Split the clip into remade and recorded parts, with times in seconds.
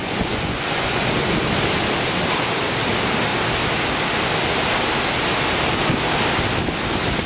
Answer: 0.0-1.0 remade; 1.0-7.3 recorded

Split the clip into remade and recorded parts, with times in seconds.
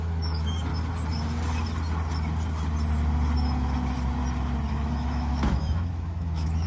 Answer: 0.0-0.7 remade; 0.7-4.7 recorded; 4.7-6.7 remade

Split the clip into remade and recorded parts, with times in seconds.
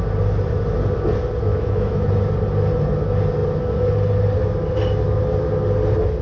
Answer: 0.0-1.5 recorded; 1.5-2.1 remade; 2.1-6.2 recorded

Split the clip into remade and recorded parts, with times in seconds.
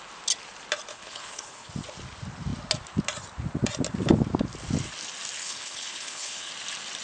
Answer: 0.0-0.9 recorded; 0.9-1.7 remade; 1.7-5.4 recorded; 5.4-6.5 remade; 6.5-7.0 recorded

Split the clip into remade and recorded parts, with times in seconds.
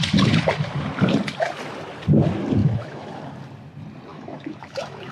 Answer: 0.0-2.6 recorded; 2.6-3.2 remade; 3.2-4.1 recorded; 4.1-5.1 remade